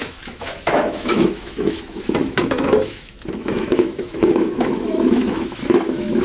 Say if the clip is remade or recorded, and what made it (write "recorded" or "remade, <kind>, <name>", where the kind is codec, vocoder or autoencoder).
remade, autoencoder, DAC-VAE